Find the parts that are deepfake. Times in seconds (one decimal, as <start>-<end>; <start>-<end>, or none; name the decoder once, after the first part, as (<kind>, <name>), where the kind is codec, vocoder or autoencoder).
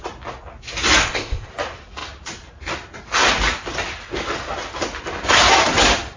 1.0-1.5 (codec, ZipCodec)